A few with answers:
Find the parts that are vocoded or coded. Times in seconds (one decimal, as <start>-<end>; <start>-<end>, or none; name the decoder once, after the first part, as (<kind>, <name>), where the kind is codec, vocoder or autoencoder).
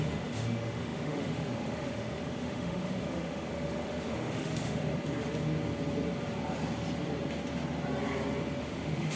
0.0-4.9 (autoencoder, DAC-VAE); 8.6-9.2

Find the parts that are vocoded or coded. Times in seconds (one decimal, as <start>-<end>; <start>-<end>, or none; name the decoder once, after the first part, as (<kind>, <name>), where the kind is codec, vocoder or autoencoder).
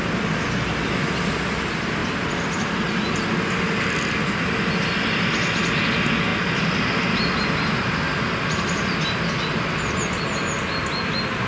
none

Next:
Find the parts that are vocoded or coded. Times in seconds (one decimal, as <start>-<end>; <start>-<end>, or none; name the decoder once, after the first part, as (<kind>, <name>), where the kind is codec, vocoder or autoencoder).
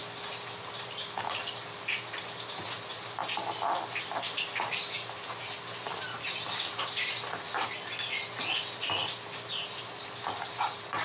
0.0-0.7 (vocoder, BigVGAN v2); 3.2-4.0